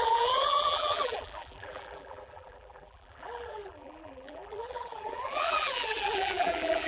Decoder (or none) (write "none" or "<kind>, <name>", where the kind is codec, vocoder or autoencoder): vocoder, BigVGAN v2